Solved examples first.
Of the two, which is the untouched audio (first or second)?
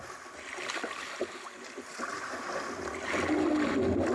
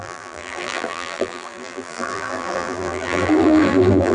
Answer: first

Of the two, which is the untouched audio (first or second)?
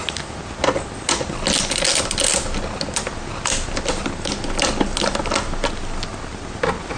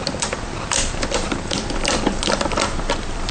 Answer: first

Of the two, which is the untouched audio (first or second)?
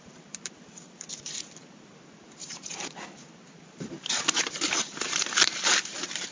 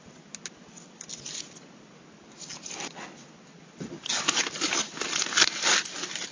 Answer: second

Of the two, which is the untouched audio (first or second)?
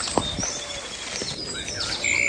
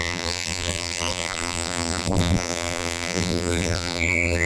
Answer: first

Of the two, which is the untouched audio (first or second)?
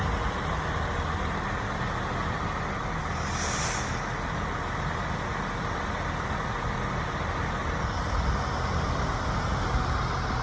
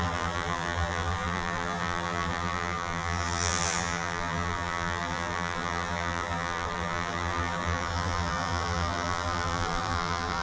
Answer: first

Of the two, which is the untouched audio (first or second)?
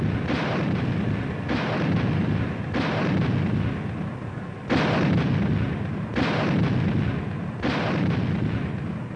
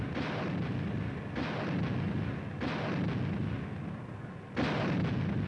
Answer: second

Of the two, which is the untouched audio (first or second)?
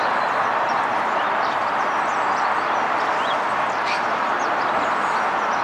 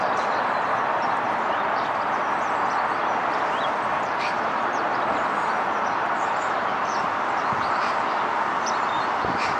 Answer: first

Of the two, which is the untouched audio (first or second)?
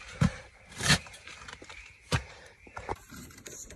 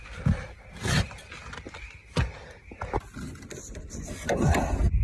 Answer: second